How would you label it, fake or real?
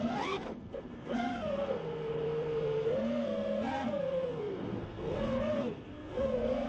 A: fake